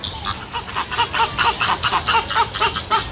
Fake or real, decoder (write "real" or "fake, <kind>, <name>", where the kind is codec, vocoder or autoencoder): real